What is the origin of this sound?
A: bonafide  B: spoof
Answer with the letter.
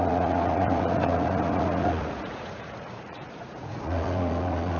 B